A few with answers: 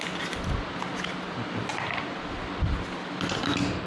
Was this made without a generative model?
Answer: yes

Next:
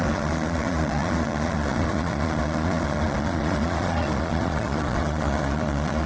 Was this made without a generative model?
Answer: no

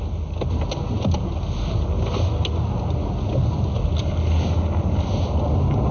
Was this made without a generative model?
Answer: yes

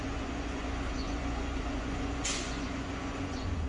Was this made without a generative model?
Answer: no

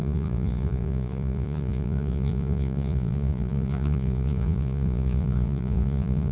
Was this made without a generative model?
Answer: no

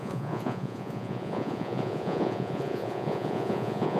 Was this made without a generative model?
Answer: no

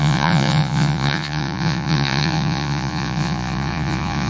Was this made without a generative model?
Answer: no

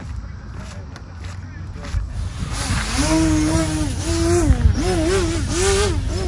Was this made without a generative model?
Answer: yes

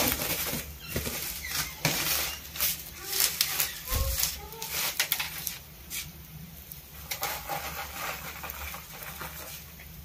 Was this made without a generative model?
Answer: yes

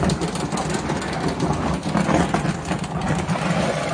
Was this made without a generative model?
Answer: yes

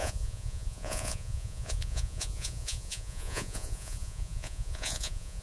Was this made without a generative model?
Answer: no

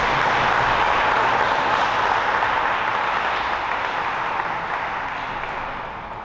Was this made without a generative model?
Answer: yes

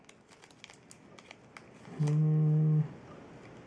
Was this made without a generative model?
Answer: yes